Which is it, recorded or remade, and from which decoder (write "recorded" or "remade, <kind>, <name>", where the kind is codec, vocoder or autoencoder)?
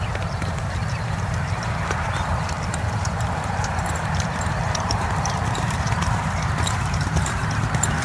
remade, vocoder, BigVGAN v2